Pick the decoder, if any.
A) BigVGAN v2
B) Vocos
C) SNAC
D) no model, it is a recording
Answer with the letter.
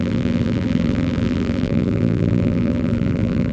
A